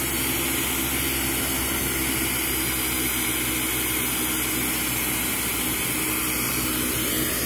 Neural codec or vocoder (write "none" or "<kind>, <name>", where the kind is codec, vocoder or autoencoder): none